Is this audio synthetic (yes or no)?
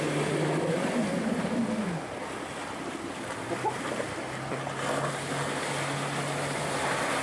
no